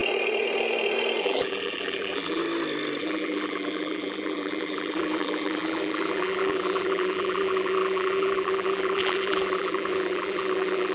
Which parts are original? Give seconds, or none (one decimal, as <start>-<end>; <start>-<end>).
0.0-1.2; 2.4-3.0

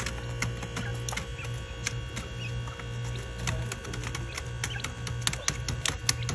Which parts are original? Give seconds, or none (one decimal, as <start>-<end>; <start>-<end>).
0.0-6.3

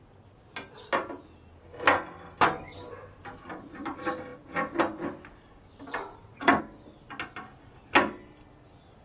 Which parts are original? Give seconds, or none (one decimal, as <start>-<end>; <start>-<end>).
0.0-9.0

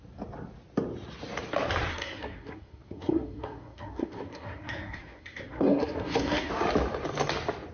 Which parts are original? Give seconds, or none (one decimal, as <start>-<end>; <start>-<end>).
0.0-1.9; 6.5-7.7

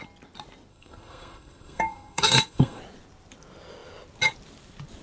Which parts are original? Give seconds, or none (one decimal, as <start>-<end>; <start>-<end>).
0.0-0.7; 2.8-5.0

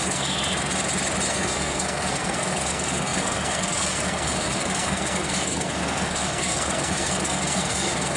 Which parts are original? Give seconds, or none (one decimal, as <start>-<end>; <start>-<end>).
0.4-1.3

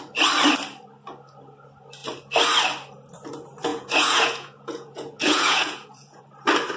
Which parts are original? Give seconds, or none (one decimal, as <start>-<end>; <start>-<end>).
0.0-3.7; 6.2-6.8

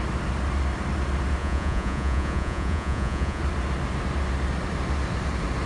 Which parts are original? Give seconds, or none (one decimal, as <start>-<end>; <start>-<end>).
0.0-1.4; 3.4-5.7